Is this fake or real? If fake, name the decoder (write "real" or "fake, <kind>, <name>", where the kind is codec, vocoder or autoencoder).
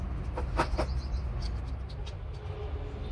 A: real